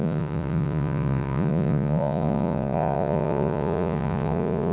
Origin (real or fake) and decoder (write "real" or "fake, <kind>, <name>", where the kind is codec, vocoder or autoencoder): fake, vocoder, Vocos